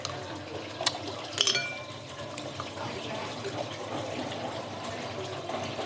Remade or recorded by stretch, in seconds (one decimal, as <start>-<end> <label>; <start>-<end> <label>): 0.0-1.6 recorded; 1.6-4.9 remade; 4.9-5.9 recorded